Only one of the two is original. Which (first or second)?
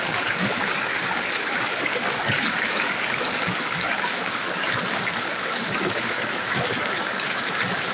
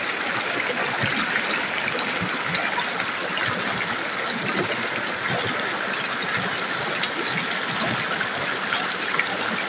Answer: second